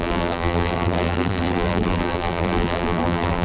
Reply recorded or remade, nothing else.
remade